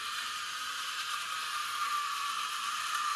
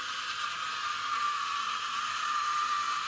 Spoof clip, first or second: first